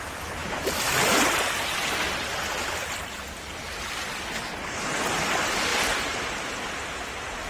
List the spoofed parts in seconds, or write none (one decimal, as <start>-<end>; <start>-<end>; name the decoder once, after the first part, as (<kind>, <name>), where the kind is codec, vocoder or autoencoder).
none